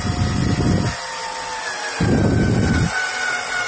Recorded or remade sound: recorded